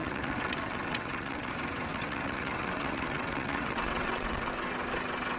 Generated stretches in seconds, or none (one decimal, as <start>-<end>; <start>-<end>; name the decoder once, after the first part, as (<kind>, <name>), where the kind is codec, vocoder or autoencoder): 0.0-1.5 (vocoder, WaveNeXt); 1.9-4.5